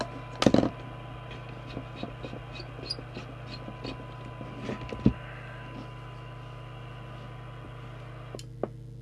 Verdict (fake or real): real